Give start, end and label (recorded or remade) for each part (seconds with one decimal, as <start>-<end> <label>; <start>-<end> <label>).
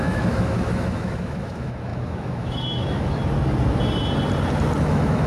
0.0-3.2 remade; 3.2-4.8 recorded; 4.8-5.3 remade